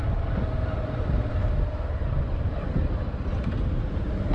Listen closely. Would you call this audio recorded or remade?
recorded